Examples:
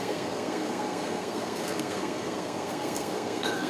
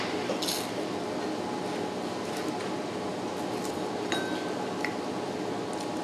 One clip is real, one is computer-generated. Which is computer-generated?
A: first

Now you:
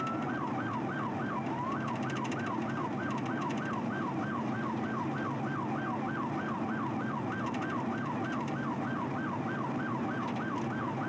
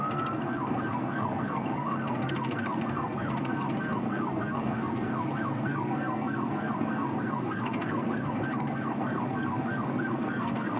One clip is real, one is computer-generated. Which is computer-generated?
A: second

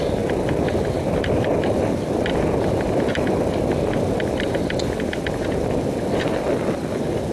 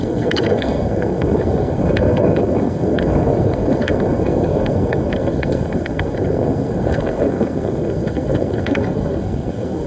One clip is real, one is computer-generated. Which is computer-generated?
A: second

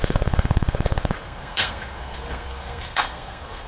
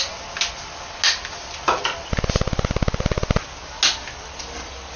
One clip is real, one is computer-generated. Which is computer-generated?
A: first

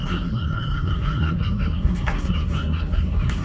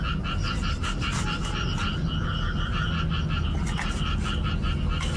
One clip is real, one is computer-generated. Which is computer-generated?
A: first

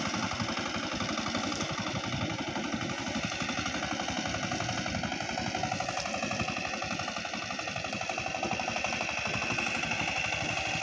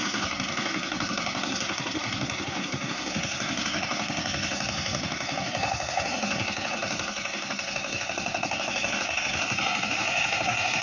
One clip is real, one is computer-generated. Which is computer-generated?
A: second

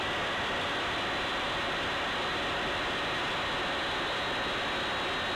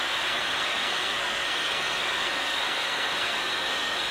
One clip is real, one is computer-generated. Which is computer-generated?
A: second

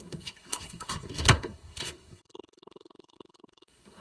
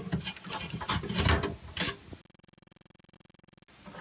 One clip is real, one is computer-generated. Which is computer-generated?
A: first